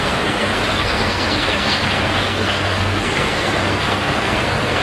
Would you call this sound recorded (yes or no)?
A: no